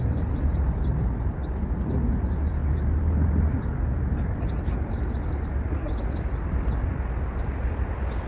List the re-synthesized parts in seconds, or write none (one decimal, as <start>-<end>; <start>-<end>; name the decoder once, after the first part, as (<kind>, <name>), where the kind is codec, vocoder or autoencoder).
none